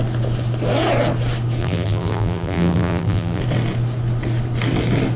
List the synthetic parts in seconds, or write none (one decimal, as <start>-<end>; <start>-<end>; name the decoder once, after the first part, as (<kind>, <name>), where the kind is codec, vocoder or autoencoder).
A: 1.6-3.4 (vocoder, BigVGAN v2)